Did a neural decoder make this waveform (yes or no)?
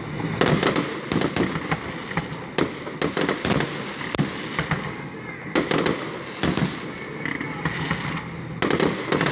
no